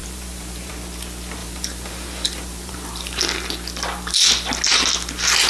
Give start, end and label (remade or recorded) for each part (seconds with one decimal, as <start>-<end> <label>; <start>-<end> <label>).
0.0-0.7 remade; 0.7-1.4 recorded; 1.4-3.2 remade; 3.2-5.5 recorded